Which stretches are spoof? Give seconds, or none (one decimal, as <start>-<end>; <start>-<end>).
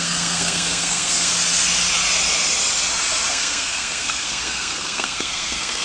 0.0-1.3; 3.3-5.8